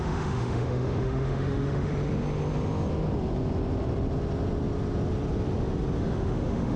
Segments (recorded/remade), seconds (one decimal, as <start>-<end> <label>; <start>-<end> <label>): 0.0-1.9 remade; 1.9-6.0 recorded; 6.0-6.8 remade